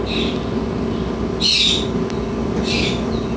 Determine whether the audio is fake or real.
real